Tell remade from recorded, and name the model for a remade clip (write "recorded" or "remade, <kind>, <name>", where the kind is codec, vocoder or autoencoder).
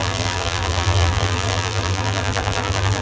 remade, vocoder, BigVGAN v2